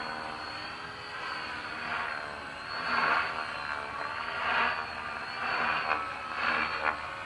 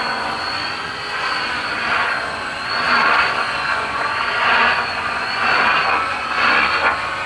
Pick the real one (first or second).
first